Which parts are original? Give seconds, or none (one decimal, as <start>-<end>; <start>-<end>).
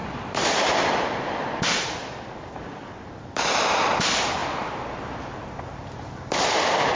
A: 3.2-7.0